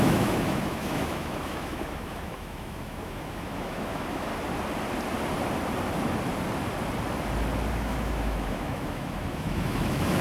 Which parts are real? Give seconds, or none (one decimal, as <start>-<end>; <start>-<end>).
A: 4.3-7.7